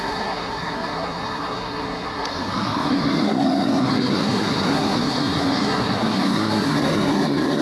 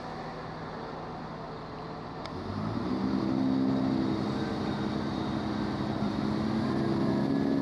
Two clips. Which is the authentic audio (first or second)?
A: second